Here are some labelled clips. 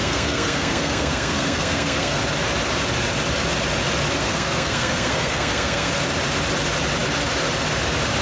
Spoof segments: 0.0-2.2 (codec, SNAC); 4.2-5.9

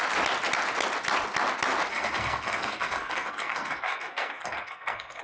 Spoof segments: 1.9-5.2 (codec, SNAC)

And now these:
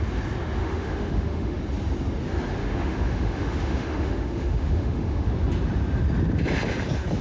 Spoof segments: 0.6-1.6 (autoencoder, DAC-VAE); 2.6-5.3